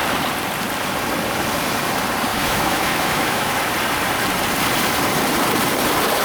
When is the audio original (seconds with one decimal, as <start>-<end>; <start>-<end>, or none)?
0.0-2.3; 3.5-6.2

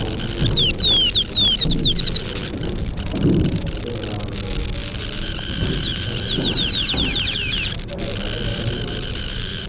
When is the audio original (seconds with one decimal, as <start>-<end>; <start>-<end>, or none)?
0.0-2.4; 3.8-4.8; 7.9-8.5

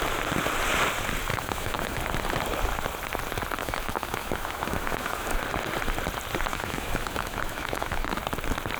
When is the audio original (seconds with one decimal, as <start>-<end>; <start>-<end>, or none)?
0.0-1.3; 2.0-3.6; 5.4-6.5; 8.2-8.8

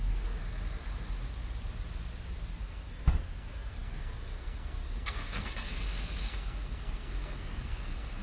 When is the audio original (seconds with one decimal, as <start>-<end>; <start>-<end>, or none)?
0.4-2.6

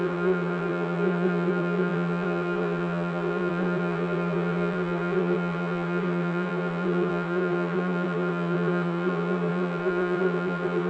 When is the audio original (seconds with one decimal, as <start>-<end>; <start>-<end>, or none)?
none

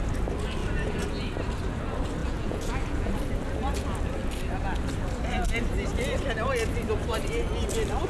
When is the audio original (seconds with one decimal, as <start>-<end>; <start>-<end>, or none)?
0.0-2.2; 3.1-8.1

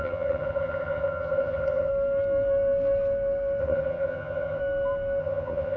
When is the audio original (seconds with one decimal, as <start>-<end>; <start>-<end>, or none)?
1.9-3.6; 4.6-5.2